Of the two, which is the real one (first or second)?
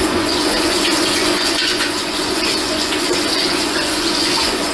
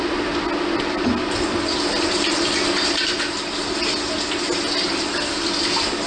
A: second